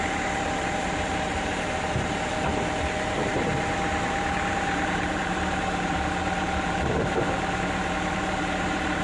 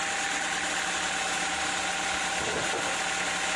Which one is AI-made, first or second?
first